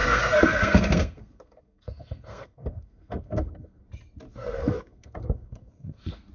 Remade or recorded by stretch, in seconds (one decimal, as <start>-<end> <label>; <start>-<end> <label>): 0.0-3.8 remade; 3.8-4.3 recorded; 4.3-6.3 remade